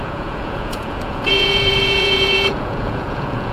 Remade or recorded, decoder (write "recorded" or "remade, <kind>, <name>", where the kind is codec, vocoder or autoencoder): remade, vocoder, Vocos